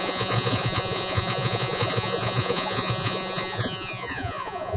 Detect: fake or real fake